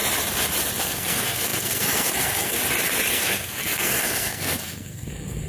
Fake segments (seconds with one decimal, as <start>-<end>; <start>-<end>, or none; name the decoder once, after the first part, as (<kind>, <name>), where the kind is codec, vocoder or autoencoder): 0.8-2.6 (codec, SNAC); 3.1-5.5

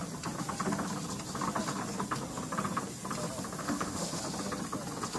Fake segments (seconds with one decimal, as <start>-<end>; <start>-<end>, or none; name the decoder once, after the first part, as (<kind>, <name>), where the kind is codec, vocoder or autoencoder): 3.6-4.2 (autoencoder, DAC-VAE)

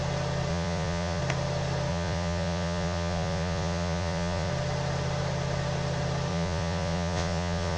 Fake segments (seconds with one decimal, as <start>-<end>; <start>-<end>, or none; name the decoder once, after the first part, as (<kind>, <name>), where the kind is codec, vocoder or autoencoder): 0.5-1.2 (vocoder, Vocos); 1.9-4.5; 6.3-7.8